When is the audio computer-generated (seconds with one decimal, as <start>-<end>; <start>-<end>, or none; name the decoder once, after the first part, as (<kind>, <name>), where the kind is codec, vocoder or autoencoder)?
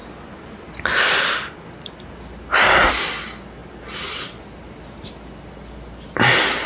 none